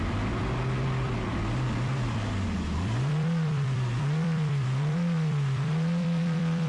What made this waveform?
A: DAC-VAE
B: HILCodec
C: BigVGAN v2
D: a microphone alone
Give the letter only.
C